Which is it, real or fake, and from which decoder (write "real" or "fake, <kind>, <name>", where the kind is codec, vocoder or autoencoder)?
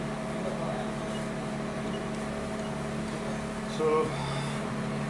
real